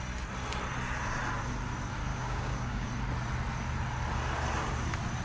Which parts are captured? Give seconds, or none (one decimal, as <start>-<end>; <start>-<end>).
0.0-2.1; 2.9-5.2